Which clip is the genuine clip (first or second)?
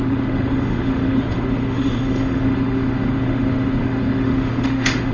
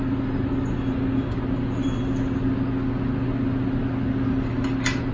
second